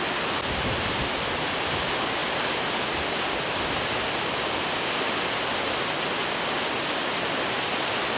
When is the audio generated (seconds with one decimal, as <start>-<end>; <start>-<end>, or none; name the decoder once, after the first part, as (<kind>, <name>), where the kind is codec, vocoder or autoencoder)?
none